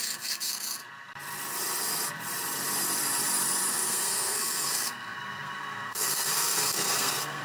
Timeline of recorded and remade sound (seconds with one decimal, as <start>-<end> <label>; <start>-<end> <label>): 0.0-0.8 remade; 0.8-3.7 recorded; 3.7-7.4 remade